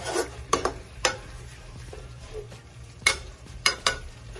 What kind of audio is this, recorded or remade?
remade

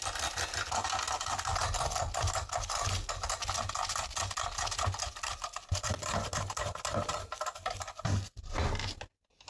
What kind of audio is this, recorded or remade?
recorded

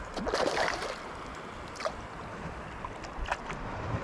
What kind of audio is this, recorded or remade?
recorded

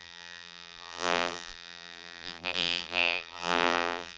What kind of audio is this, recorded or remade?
remade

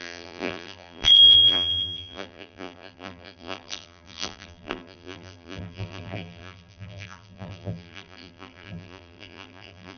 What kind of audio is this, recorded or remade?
remade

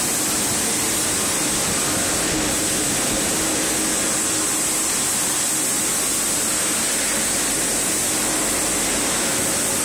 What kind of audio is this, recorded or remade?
recorded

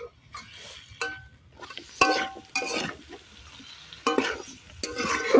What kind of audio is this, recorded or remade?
recorded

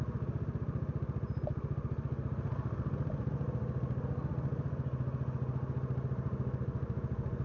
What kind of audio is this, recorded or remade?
recorded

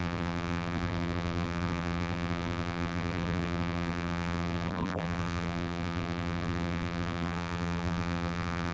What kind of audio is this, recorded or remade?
remade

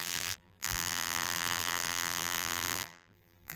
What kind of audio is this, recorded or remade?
remade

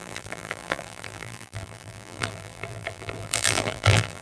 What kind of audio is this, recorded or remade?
remade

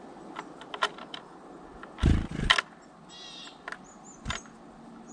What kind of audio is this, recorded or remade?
recorded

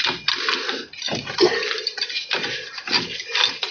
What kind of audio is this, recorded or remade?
recorded